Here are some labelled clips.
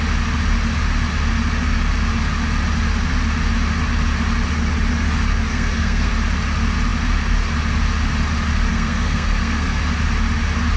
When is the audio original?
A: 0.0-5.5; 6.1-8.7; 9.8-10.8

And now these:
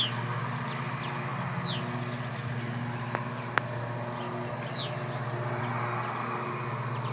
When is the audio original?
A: 0.0-7.1

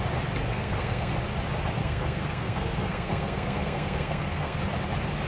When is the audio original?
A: 0.0-0.5; 1.1-1.8; 4.6-5.3